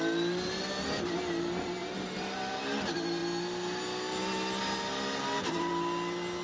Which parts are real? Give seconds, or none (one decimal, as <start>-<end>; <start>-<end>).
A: 0.0-1.8; 2.6-6.4